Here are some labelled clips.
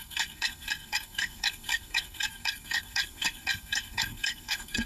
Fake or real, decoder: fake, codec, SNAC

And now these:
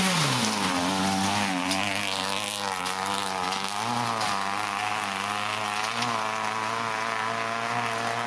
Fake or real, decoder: real